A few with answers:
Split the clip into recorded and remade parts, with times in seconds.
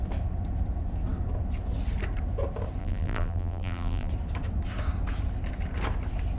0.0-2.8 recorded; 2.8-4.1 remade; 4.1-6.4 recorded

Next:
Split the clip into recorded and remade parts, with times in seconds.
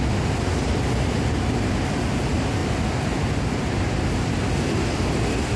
0.0-5.6 recorded